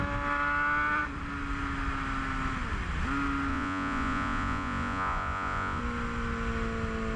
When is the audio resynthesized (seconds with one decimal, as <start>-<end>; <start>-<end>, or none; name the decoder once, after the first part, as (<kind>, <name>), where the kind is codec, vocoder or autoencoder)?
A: 3.5-5.8 (vocoder, Vocos)